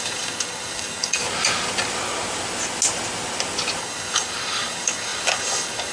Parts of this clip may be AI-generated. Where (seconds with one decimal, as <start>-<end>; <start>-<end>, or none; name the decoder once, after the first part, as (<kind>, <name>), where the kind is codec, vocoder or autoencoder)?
0.0-1.2 (codec, DAC); 3.8-5.9